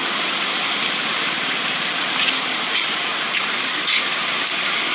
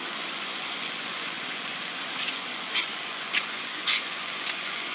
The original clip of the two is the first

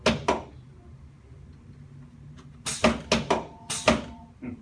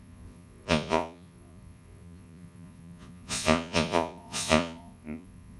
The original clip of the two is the first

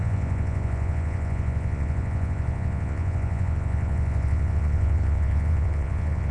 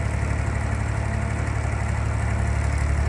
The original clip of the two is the second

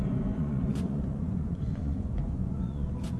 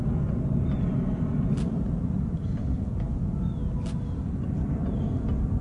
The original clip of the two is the second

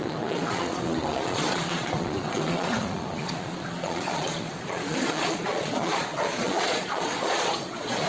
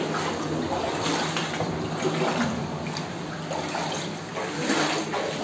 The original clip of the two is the second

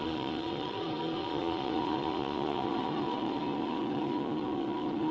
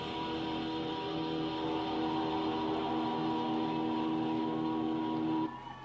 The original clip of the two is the second